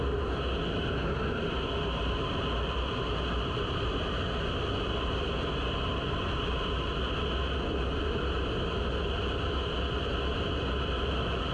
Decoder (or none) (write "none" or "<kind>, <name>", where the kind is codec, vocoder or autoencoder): none